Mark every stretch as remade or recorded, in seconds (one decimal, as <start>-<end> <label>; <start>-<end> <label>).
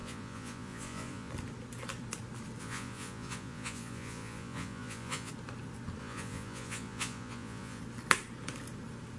0.0-1.3 remade; 1.3-2.6 recorded; 2.6-5.3 remade; 5.3-6.0 recorded; 6.0-7.8 remade; 7.8-9.2 recorded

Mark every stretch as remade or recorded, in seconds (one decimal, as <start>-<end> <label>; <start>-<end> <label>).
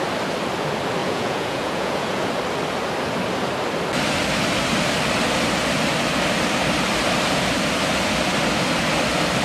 0.0-1.0 recorded; 1.0-2.3 remade; 2.3-9.4 recorded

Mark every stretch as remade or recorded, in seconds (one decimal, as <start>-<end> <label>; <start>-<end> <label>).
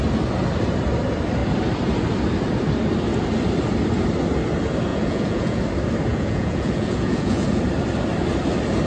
0.0-4.9 recorded; 4.9-5.6 remade; 5.6-6.1 recorded; 6.1-7.6 remade; 7.6-8.9 recorded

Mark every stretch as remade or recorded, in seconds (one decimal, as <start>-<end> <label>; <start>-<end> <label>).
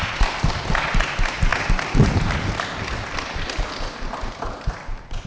0.0-5.3 recorded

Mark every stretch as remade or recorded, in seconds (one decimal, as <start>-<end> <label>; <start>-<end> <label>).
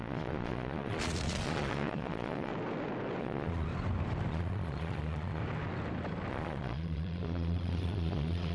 0.0-2.5 remade; 2.5-3.2 recorded; 3.2-3.7 remade; 3.7-4.3 recorded; 4.3-5.4 remade; 5.4-6.3 recorded; 6.3-8.5 remade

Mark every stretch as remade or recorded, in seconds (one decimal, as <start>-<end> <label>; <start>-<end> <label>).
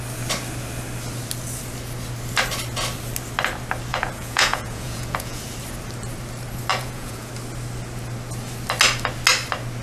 0.0-3.9 recorded; 3.9-5.4 remade; 5.4-6.7 recorded; 6.7-7.3 remade; 7.3-9.8 recorded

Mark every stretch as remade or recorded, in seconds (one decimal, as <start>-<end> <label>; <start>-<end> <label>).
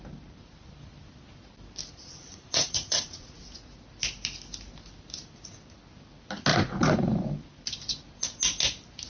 0.0-1.8 recorded; 1.8-3.4 remade; 3.4-6.5 recorded; 6.5-7.3 remade; 7.3-9.1 recorded